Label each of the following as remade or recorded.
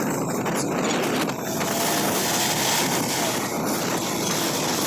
recorded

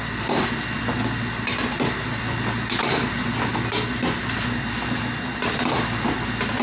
recorded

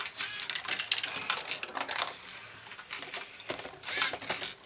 recorded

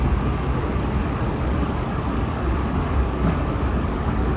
remade